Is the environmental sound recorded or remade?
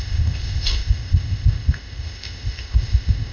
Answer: remade